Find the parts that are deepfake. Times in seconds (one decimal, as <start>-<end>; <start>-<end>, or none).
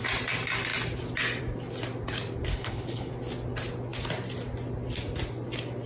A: 2.5-3.1